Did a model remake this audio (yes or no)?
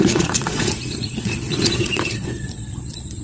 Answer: yes